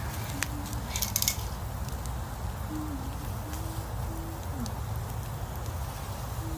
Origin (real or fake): real